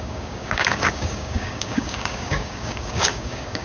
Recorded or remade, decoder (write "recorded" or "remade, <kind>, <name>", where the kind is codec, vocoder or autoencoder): remade, codec, DAC